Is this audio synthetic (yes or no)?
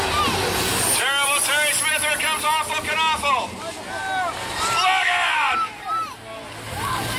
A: no